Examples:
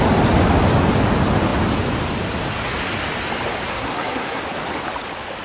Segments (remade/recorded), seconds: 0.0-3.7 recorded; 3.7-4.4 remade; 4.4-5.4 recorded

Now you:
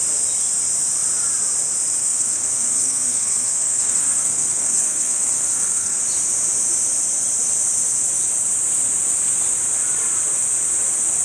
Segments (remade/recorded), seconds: 0.0-2.0 recorded; 2.0-6.0 remade; 6.0-11.2 recorded

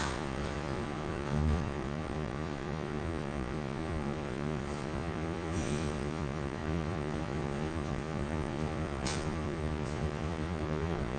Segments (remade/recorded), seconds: 0.0-11.2 remade